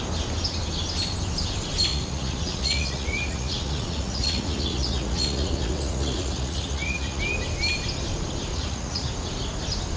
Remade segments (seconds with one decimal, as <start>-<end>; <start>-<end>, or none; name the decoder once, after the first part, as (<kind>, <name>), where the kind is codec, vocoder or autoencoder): 1.9-7.2 (vocoder, Vocos); 8.5-9.1